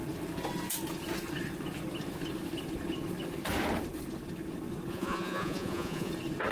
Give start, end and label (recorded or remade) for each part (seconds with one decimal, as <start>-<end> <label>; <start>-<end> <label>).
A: 0.0-4.9 recorded; 4.9-6.1 remade; 6.1-6.5 recorded